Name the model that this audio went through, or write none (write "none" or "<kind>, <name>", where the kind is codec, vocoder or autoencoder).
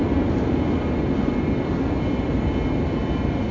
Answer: none